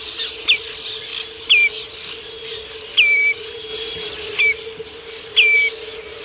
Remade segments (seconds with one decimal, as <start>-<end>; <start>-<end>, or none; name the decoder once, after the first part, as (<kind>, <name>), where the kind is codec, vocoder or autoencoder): none